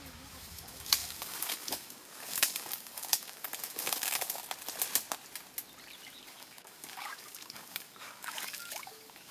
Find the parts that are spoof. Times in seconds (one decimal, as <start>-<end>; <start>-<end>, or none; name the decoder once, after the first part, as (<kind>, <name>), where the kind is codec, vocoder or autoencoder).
0.0-4.4 (codec, DAC); 6.3-9.3